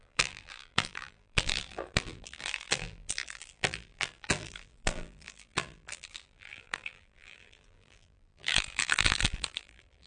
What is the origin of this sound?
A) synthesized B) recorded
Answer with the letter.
A